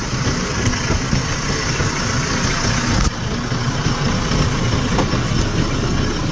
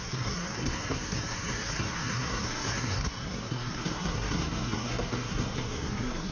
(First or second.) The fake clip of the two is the second